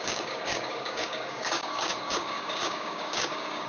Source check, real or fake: fake